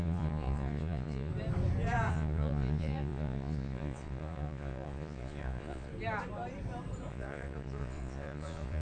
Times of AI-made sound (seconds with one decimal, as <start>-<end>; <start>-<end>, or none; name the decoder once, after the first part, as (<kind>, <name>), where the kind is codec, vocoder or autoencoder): 0.0-1.3 (vocoder, Vocos); 2.1-5.9; 7.1-8.8